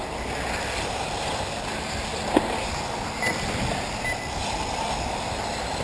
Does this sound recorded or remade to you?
recorded